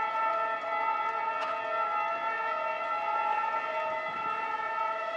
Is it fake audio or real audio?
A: real